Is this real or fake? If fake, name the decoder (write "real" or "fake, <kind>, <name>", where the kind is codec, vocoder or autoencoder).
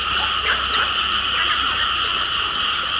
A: real